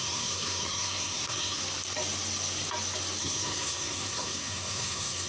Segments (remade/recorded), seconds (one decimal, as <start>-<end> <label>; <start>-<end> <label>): 0.0-1.6 remade; 1.6-3.2 recorded; 3.2-5.3 remade